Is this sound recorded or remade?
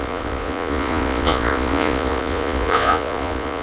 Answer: remade